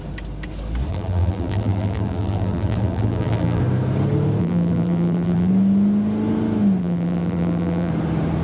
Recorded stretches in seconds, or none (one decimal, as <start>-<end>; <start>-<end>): 0.0-0.9; 3.6-4.4; 5.5-6.8; 7.9-8.4